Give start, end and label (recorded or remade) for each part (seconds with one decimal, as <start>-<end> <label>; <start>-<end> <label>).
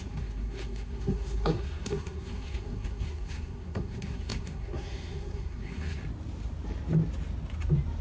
0.0-6.0 remade; 6.0-8.0 recorded